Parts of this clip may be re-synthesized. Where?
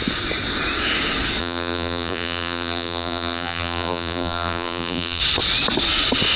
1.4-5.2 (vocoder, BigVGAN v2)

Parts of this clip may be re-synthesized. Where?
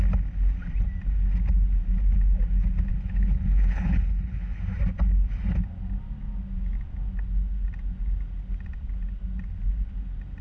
2.9-4.6 (codec, HILCodec)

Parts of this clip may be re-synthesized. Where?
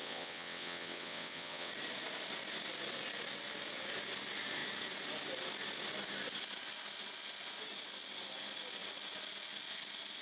0.0-1.7 (vocoder, WaveNeXt)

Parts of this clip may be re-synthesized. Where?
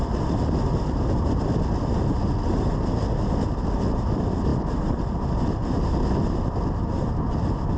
none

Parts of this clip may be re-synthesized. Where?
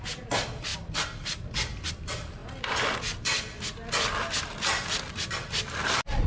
none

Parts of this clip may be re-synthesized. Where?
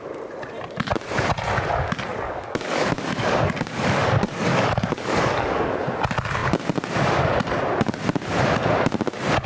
2.1-5.7 (codec, DAC)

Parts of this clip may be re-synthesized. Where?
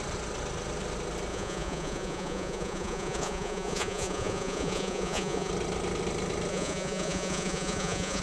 1.3-5.5 (vocoder, Vocos); 6.5-8.2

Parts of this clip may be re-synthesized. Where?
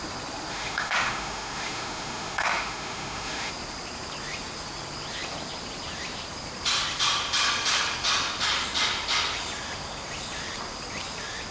0.5-3.5 (autoencoder, DAC-VAE)